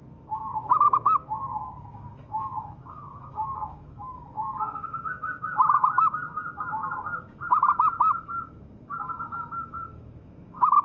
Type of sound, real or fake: fake